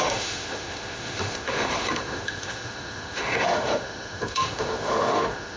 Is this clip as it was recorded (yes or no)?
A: no